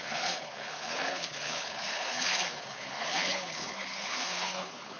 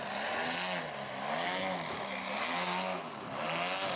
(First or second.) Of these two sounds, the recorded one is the second